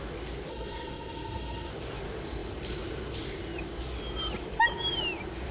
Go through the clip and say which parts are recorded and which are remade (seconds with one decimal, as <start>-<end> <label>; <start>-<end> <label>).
0.0-0.5 recorded; 0.5-1.7 remade; 1.7-5.5 recorded